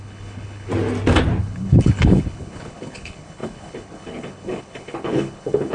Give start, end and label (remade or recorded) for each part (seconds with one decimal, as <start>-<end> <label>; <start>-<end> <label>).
0.0-0.7 remade; 0.7-1.4 recorded; 1.4-5.7 remade